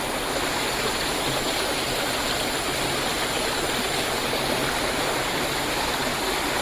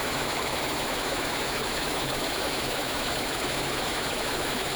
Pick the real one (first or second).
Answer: first